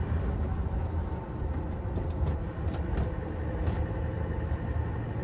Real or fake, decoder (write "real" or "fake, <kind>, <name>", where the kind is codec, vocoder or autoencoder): real